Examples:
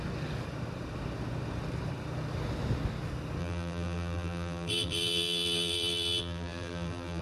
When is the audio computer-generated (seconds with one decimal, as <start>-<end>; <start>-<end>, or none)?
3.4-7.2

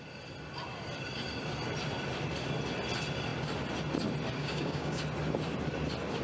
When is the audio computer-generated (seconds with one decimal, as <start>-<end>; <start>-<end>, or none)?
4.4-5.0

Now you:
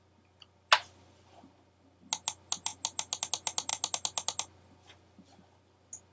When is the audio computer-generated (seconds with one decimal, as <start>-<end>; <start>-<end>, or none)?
none